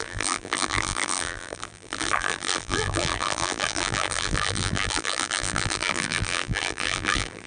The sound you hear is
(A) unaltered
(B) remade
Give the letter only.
B